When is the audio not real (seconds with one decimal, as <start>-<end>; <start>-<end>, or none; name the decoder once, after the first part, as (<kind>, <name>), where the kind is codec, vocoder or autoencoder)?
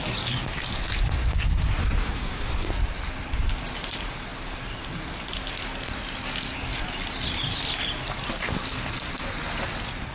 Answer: 1.8-2.7 (codec, SNAC)